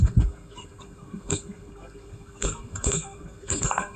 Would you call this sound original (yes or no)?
no